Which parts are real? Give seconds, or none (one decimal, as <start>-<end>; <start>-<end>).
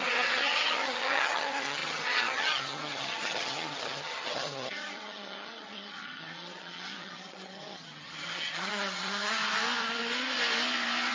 9.4-11.1